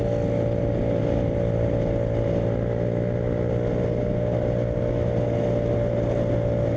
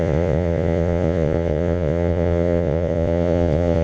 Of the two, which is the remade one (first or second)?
second